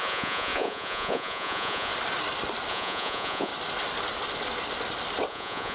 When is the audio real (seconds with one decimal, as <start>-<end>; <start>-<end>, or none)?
1.9-2.7; 3.5-5.3